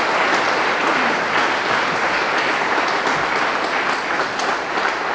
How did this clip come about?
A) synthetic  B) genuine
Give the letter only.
B